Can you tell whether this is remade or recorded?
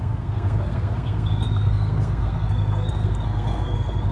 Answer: remade